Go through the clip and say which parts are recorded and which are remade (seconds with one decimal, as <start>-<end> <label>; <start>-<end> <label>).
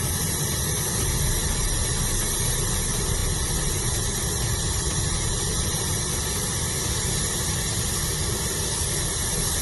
0.0-9.6 recorded